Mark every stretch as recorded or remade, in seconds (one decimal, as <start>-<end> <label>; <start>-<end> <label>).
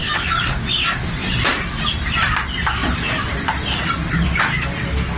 0.0-0.7 remade; 0.7-1.2 recorded; 1.2-2.3 remade; 2.3-2.8 recorded; 2.8-4.4 remade; 4.4-5.2 recorded